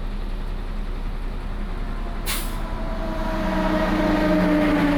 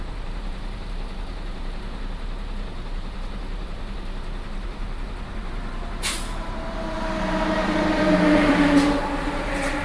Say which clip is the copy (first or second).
second